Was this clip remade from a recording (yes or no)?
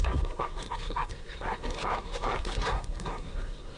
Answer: yes